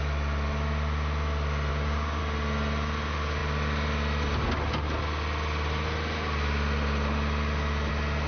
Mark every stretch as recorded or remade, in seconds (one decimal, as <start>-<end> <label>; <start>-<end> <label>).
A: 0.0-1.7 recorded; 1.7-2.2 remade; 2.2-8.3 recorded